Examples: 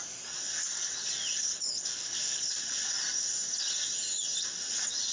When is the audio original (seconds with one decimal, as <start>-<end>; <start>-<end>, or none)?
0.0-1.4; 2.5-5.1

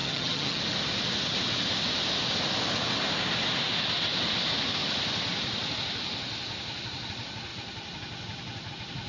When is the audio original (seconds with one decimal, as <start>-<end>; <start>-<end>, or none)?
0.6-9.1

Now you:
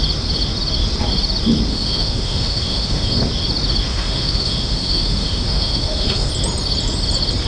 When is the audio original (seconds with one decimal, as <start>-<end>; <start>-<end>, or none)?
0.0-1.7; 3.2-3.9; 6.3-7.5